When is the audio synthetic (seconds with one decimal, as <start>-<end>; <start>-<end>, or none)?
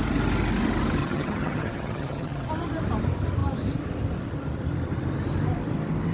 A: 1.0-2.5